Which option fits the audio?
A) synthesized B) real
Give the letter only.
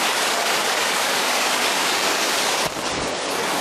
A